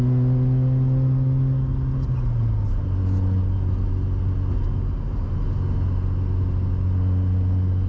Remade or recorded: recorded